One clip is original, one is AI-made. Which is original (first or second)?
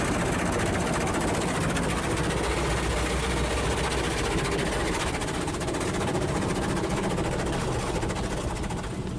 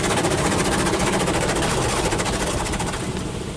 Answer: first